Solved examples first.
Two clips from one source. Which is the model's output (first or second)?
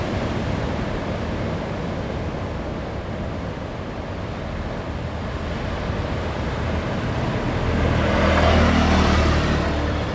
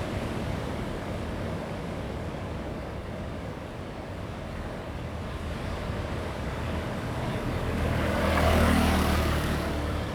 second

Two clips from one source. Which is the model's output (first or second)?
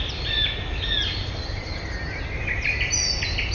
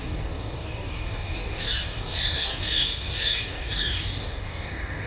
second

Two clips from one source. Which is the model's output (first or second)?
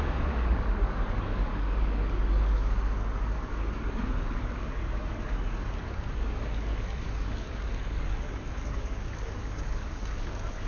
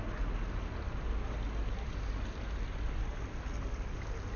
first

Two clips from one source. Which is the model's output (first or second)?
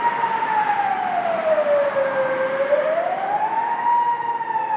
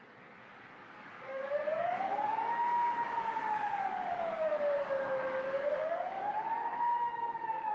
second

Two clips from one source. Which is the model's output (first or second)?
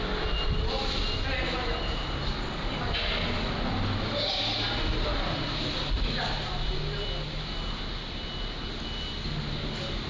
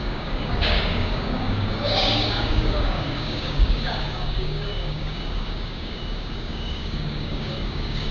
second